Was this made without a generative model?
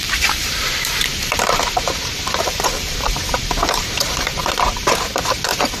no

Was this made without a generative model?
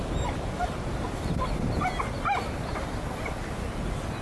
yes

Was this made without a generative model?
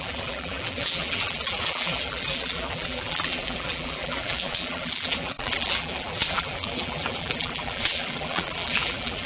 no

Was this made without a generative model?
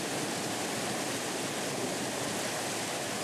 yes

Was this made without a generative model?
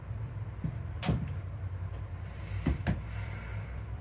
no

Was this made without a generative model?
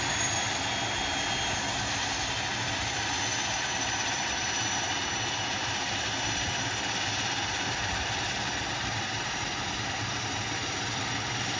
no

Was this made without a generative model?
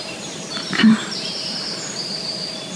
no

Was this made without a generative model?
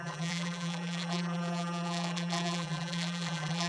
no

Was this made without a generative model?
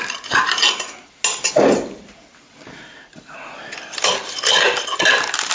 yes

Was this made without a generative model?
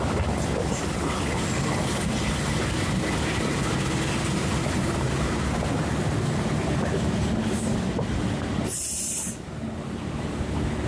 yes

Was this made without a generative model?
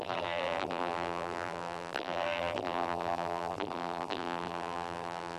no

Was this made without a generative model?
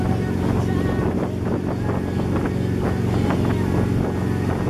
yes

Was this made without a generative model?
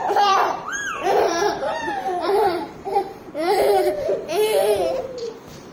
no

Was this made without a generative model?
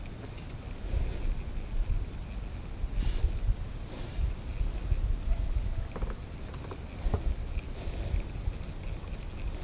yes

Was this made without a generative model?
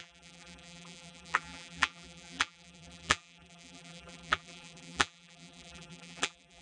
no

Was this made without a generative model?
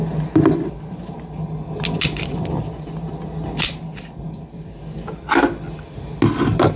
yes